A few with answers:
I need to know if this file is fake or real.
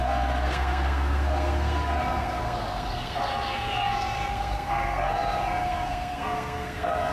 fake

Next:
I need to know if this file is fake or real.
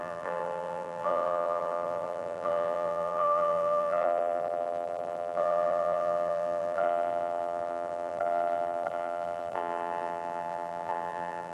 fake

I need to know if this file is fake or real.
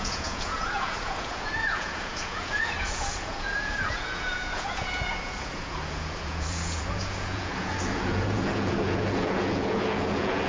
fake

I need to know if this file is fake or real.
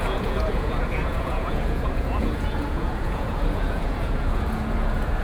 fake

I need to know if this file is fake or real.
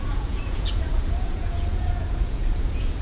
fake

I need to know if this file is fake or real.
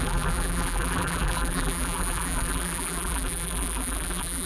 fake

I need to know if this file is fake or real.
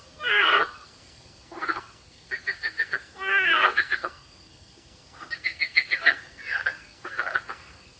fake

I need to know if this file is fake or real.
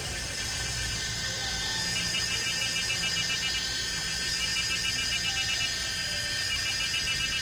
fake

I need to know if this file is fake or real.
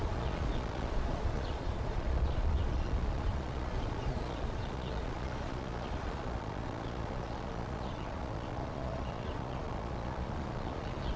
fake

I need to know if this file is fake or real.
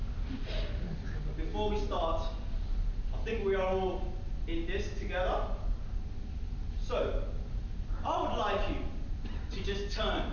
real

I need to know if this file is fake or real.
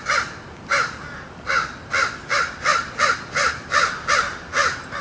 real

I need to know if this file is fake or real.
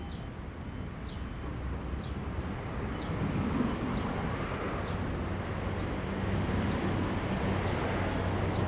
real